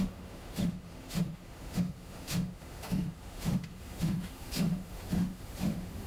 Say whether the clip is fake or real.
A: fake